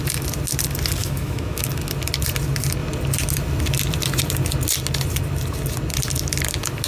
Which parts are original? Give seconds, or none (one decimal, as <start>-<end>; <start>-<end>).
0.0-1.0; 1.7-6.9